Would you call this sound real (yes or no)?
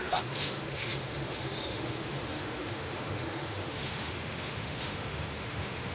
no